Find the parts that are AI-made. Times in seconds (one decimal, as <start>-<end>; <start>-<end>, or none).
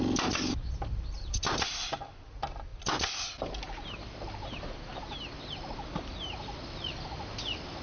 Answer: none